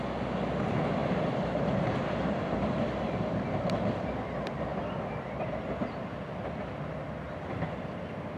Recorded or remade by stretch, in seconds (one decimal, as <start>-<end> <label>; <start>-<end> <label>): 0.0-1.0 recorded; 1.0-2.6 remade; 2.6-8.4 recorded